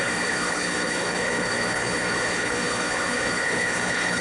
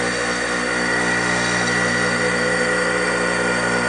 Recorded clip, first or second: second